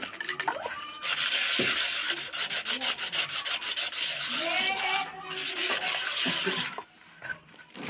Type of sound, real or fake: real